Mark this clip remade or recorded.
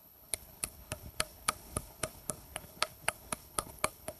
remade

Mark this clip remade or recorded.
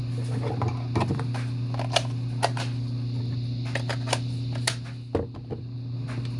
recorded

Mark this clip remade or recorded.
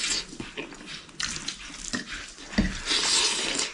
recorded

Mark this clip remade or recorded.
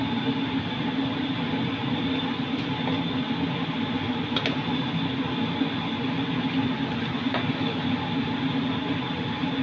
recorded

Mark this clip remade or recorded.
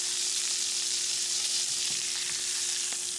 recorded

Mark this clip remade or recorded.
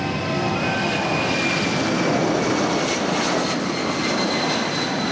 recorded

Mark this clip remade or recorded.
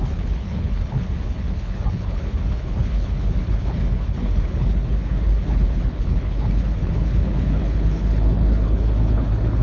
remade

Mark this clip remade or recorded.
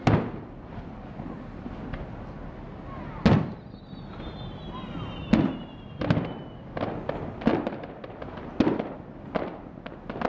recorded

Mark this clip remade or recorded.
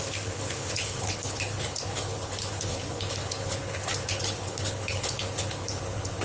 remade